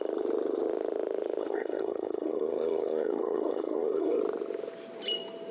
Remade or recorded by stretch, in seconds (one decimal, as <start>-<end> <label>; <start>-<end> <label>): 0.0-1.4 recorded; 1.4-4.2 remade; 4.2-5.5 recorded

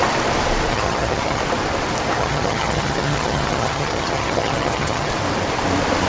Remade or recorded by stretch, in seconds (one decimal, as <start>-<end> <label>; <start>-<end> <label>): 0.0-0.7 recorded; 0.7-1.4 remade; 1.4-2.2 recorded; 2.2-5.1 remade; 5.1-6.1 recorded

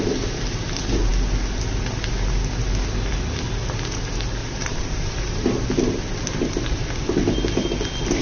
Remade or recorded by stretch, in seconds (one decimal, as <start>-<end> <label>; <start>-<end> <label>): 0.0-4.4 recorded; 4.4-6.2 remade; 6.2-8.2 recorded